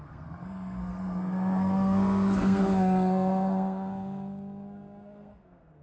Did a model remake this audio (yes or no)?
yes